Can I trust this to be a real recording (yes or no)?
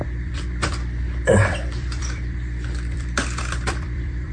no